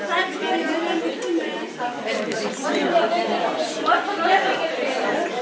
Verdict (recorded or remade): recorded